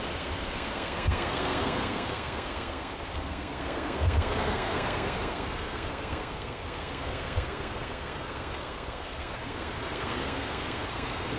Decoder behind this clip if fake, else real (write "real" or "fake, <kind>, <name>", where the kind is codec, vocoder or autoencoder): fake, codec, SNAC